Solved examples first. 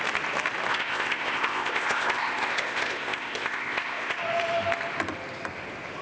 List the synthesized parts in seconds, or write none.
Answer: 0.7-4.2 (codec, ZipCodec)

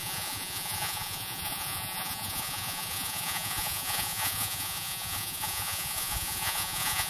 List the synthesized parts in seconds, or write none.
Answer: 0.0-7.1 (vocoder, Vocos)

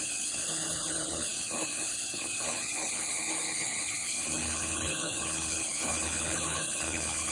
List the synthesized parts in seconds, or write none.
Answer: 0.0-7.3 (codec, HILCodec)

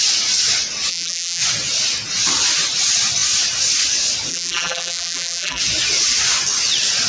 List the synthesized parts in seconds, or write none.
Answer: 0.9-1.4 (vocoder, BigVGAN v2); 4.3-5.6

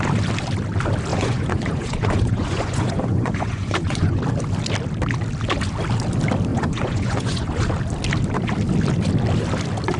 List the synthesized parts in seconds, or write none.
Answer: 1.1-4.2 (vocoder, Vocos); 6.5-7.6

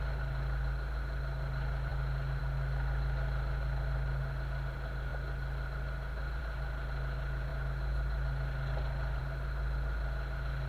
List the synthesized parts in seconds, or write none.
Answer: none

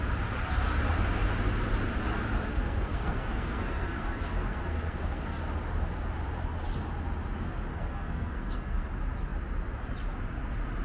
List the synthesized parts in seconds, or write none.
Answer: 2.5-5.4 (codec, SNAC); 7.7-8.9

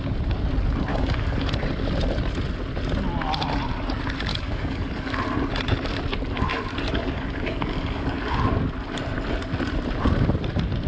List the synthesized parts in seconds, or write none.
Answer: 0.9-1.5 (codec, DAC); 4.3-5.2; 6.5-8.2